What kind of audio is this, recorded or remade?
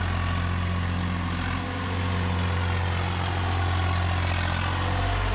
recorded